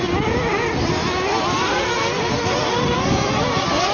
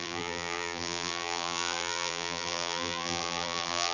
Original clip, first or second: first